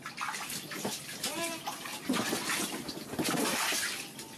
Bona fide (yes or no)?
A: yes